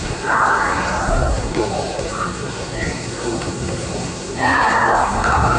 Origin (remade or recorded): remade